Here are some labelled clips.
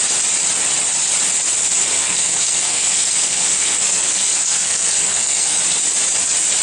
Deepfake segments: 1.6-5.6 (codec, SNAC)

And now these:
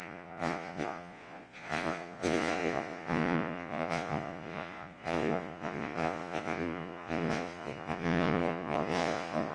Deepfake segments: 0.0-9.5 (vocoder, Vocos)

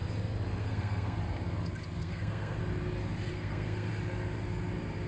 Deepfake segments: 0.6-1.2 (codec, SNAC); 2.0-2.6; 3.3-3.9